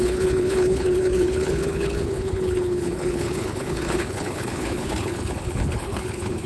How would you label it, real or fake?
fake